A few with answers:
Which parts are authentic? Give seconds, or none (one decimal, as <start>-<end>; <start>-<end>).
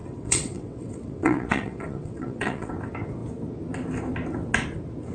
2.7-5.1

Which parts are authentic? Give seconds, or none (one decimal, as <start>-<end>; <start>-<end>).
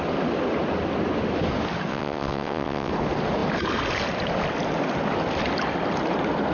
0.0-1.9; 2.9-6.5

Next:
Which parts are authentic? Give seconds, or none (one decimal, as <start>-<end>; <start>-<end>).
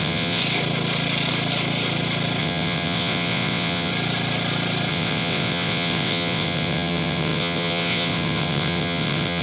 0.4-2.4; 3.9-4.9